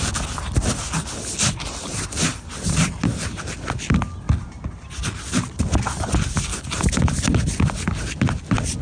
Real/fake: real